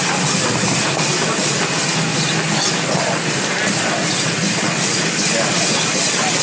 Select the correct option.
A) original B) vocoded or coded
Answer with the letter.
A